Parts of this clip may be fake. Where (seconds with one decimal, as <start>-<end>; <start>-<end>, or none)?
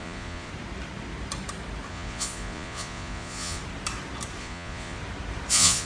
0.0-0.5; 1.9-3.6; 4.4-5.0; 5.5-5.9